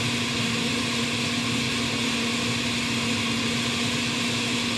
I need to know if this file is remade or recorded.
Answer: recorded